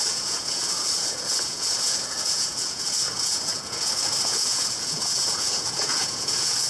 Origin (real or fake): fake